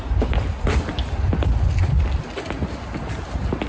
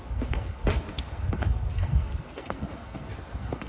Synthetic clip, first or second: second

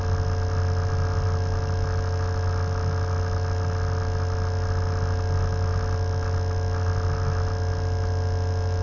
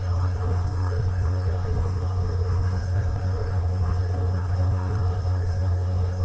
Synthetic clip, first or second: second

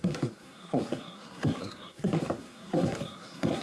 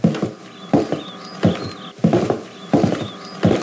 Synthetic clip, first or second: first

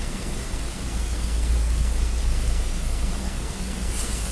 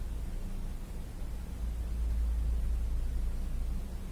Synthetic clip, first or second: first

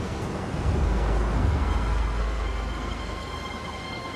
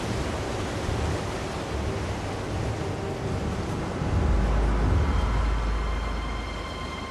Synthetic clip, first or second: first